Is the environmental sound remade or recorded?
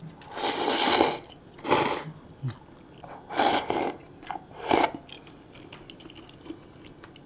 recorded